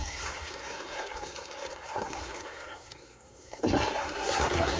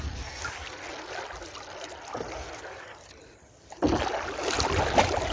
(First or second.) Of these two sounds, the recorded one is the second